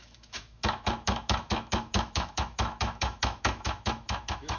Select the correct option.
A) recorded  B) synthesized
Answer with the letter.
B